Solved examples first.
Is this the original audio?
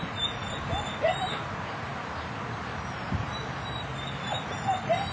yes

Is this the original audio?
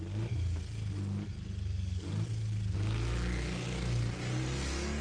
yes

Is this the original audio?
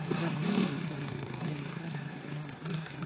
no